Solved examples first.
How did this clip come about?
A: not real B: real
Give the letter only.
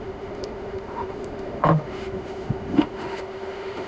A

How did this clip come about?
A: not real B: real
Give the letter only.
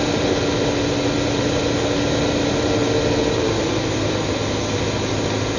B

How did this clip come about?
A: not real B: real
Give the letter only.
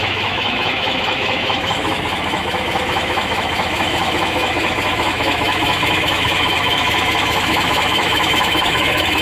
A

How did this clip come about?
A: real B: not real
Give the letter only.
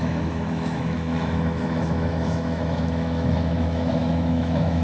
B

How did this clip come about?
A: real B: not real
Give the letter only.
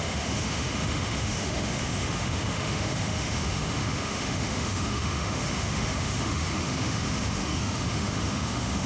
B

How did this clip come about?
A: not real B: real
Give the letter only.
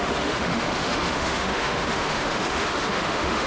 A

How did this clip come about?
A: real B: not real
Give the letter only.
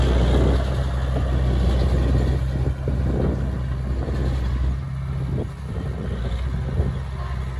A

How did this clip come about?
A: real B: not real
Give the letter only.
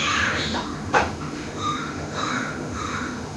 B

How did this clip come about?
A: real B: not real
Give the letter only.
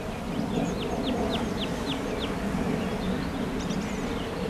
A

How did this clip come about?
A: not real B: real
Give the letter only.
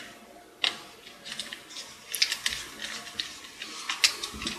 B